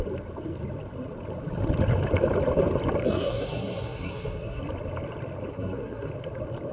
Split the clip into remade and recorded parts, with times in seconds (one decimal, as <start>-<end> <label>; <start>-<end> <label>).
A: 0.0-3.0 recorded; 3.0-4.6 remade; 4.6-5.5 recorded; 5.5-6.1 remade; 6.1-6.7 recorded